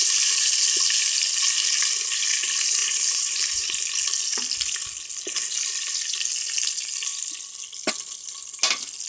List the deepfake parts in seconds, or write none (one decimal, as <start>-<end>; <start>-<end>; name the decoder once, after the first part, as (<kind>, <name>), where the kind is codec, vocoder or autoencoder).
2.8-3.7 (vocoder, BigVGAN v2)